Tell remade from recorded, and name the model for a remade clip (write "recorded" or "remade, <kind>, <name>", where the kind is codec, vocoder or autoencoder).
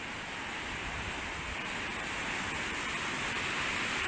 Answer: remade, vocoder, BigVGAN v2